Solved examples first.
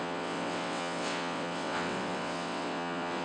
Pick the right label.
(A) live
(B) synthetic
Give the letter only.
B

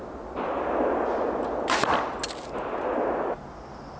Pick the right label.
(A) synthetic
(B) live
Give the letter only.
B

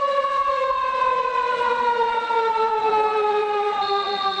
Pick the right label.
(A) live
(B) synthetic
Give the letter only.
B